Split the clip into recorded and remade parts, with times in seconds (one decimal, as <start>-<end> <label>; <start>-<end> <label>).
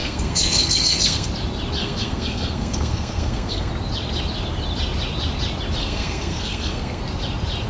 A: 0.0-1.3 remade; 1.3-1.8 recorded; 1.8-3.7 remade; 3.7-5.8 recorded; 5.8-7.0 remade; 7.0-7.7 recorded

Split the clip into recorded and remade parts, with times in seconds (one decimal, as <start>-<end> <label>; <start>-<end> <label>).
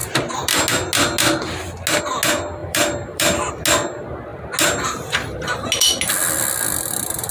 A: 0.0-2.6 recorded; 2.6-3.5 remade; 3.5-7.3 recorded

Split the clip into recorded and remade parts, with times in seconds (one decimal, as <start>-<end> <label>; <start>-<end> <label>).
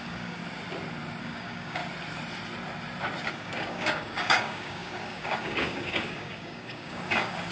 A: 0.0-0.4 remade; 0.4-1.2 recorded; 1.2-1.8 remade; 1.8-3.3 recorded; 3.3-7.5 remade